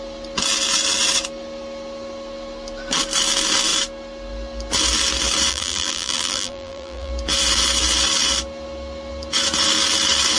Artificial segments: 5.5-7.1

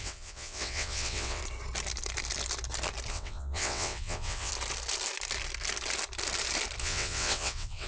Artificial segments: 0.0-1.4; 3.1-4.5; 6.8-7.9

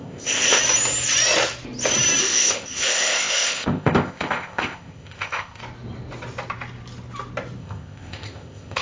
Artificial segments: 0.0-0.6; 2.2-5.6; 7.6-8.8